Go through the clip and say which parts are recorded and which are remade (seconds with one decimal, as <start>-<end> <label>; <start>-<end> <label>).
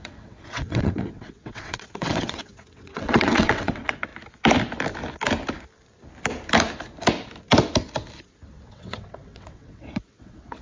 0.0-4.1 remade; 4.1-8.7 recorded; 8.7-10.6 remade